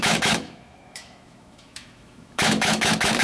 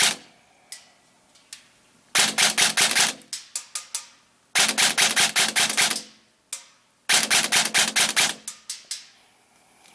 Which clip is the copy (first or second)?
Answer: first